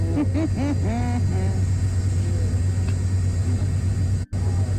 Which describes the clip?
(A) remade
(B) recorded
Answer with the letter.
B